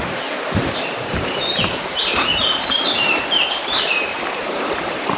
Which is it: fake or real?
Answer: fake